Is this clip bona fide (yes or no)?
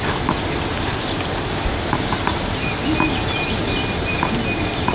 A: yes